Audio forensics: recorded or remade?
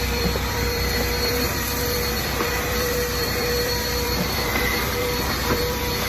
remade